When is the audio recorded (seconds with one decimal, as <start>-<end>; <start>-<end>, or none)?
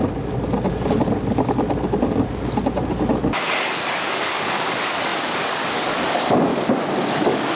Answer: 0.0-3.9; 6.5-7.1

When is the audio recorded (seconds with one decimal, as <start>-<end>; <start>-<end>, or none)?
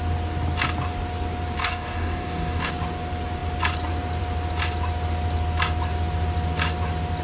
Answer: 0.0-1.6; 2.7-7.2